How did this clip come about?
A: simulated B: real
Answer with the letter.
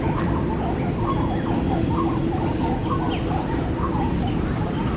B